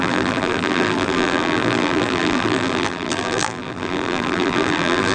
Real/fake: fake